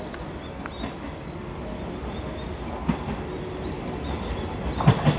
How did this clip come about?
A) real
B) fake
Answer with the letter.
A